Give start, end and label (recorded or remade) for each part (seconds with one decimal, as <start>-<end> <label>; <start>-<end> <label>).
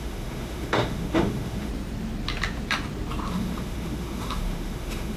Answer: 0.0-1.7 remade; 1.7-3.3 recorded; 3.3-5.2 remade